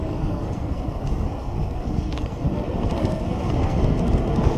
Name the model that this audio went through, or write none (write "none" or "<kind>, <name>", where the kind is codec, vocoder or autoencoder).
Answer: codec, SNAC